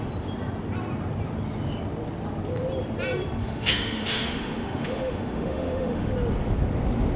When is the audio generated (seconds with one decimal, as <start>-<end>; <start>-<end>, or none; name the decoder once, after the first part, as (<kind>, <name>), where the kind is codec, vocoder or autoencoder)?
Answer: 3.4-6.1 (autoencoder, DAC-VAE)